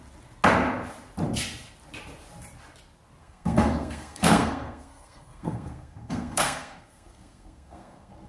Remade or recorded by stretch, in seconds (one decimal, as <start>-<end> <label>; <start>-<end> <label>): 0.0-3.2 recorded; 3.2-8.3 remade